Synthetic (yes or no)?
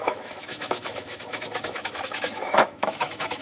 yes